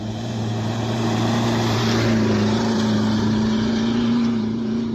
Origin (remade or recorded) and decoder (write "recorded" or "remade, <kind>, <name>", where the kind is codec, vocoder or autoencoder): remade, vocoder, BigVGAN v2